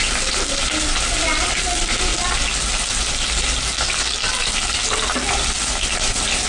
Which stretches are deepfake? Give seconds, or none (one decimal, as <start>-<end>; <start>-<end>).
none